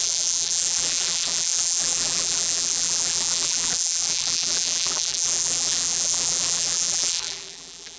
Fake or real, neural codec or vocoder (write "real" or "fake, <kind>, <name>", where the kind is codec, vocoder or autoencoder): fake, vocoder, BigVGAN v2